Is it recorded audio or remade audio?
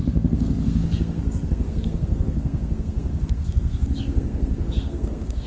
remade